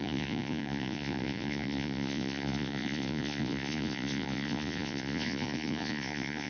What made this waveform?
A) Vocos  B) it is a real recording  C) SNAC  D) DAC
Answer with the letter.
A